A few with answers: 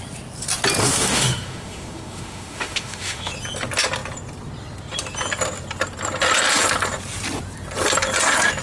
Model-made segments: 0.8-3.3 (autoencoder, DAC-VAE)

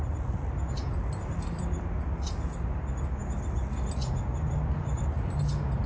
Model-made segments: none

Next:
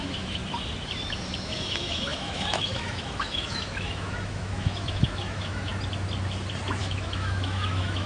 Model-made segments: 0.0-0.4 (autoencoder, DAC-VAE); 1.4-5.7; 6.8-8.1

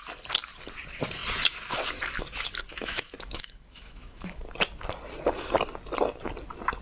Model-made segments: 2.7-4.4 (autoencoder, DAC-VAE)

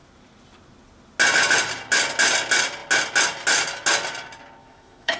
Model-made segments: 4.6-5.2 (autoencoder, DAC-VAE)